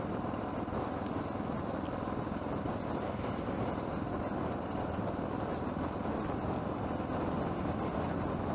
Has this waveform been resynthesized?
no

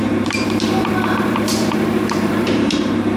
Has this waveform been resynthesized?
yes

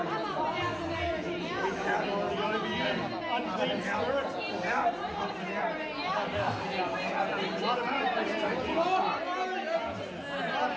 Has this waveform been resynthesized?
no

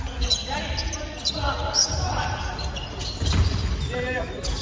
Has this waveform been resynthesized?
no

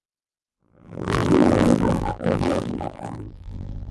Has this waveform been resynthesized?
yes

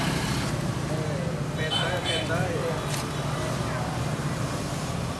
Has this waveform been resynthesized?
no